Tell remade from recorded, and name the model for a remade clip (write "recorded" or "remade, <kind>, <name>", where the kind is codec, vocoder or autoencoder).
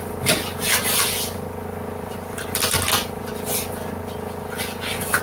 recorded